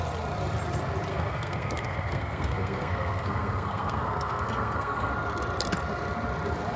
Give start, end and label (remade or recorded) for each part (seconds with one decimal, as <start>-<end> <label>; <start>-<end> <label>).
0.0-1.1 recorded; 1.1-5.1 remade; 5.1-6.8 recorded